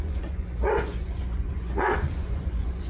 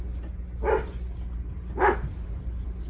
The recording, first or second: second